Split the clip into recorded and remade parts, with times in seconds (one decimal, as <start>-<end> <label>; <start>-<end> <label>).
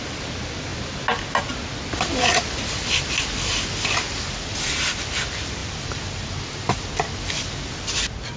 0.0-8.4 recorded